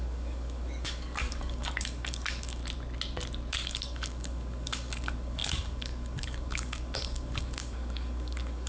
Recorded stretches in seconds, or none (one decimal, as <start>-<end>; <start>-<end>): 2.6-3.5